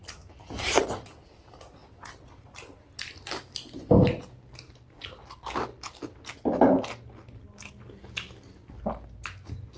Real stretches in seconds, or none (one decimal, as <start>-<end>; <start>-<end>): 0.0-9.8